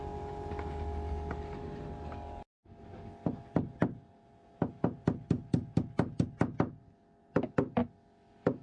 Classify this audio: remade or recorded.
recorded